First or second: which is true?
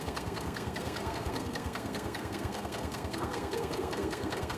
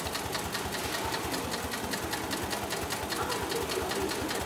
second